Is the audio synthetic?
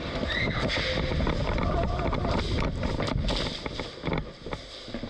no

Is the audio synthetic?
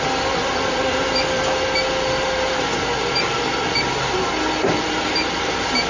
no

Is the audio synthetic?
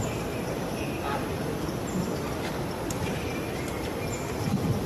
no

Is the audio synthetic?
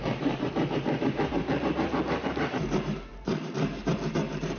yes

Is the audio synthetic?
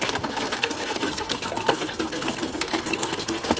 yes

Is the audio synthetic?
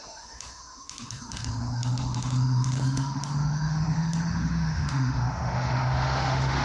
yes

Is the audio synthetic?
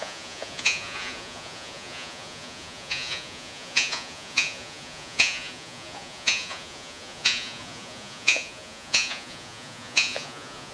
yes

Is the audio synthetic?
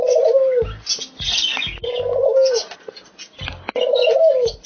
no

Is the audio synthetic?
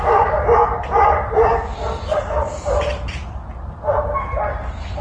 no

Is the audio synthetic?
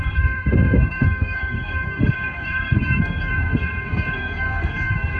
yes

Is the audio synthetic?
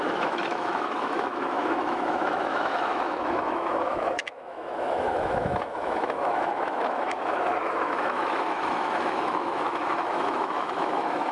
yes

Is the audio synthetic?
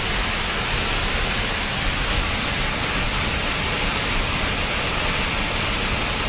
no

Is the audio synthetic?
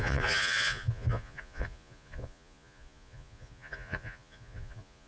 yes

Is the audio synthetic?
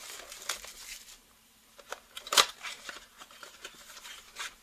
yes